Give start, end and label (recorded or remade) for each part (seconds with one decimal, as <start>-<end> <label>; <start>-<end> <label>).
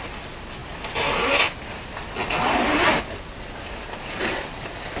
0.0-5.0 recorded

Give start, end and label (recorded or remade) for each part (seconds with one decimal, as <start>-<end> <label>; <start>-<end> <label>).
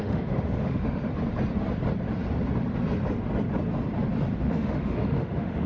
0.0-1.1 remade; 1.1-4.5 recorded; 4.5-5.7 remade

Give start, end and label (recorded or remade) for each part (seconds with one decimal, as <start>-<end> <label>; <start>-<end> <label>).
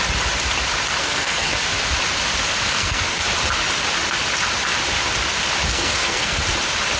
0.0-1.0 recorded; 1.0-1.6 remade; 1.6-2.6 recorded; 2.6-3.2 remade; 3.2-5.7 recorded; 5.7-6.4 remade; 6.4-7.0 recorded